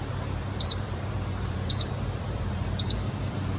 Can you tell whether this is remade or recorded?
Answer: remade